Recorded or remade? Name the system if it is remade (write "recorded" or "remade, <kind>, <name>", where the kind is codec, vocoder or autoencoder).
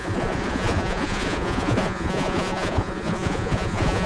remade, vocoder, Vocos